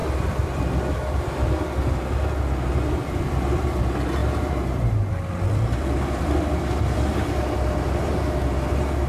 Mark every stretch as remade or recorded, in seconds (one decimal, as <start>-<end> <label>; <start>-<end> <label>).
0.0-1.2 remade; 1.2-3.0 recorded; 3.0-3.8 remade; 3.8-4.2 recorded; 4.2-8.0 remade; 8.0-9.1 recorded